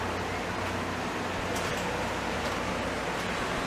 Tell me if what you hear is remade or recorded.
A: recorded